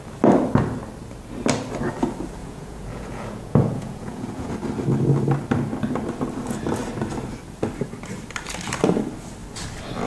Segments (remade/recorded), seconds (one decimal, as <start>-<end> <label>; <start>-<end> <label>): 0.0-2.4 recorded; 2.4-4.5 remade; 4.5-10.1 recorded